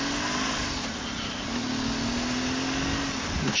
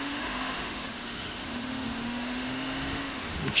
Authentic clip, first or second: first